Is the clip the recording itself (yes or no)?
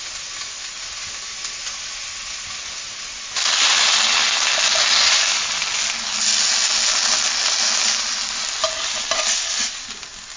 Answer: yes